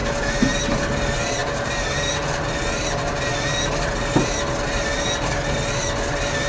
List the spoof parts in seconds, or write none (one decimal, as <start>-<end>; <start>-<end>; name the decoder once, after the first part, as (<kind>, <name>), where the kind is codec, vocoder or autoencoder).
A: none